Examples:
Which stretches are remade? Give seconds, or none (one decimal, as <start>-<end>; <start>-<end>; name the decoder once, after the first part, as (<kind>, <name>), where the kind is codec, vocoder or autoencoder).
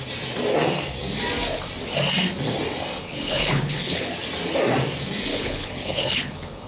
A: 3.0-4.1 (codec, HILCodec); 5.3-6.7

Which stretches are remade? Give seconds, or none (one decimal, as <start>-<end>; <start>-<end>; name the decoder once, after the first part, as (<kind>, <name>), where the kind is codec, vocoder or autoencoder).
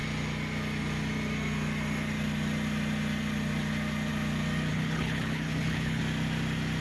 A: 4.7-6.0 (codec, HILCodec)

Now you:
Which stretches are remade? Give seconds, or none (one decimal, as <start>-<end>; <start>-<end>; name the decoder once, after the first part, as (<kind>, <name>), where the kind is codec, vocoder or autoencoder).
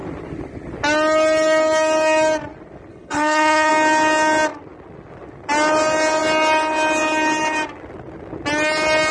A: 2.9-3.7 (codec, HILCodec)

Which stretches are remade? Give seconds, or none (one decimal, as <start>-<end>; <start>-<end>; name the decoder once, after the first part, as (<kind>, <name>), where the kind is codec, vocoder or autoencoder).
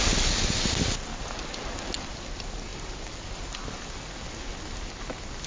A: none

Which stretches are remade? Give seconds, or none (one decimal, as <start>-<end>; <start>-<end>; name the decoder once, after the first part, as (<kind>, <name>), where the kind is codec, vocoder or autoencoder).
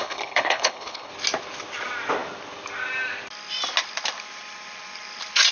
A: 0.0-1.1 (codec, HILCodec)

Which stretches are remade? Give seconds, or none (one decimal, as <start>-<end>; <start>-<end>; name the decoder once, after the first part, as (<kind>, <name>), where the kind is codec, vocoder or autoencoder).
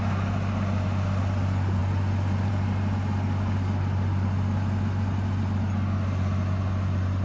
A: none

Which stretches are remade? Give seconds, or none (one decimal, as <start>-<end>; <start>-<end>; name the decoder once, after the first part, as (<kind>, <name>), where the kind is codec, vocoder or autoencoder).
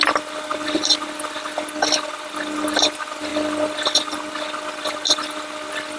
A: none